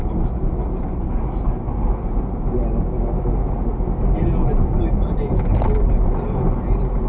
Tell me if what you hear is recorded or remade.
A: recorded